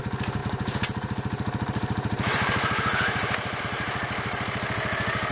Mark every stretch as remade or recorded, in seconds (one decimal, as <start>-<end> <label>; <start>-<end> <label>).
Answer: 0.0-0.4 recorded; 0.4-3.6 remade; 3.6-5.3 recorded